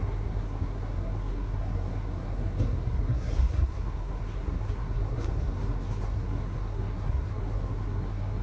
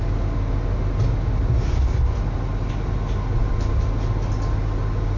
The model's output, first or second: first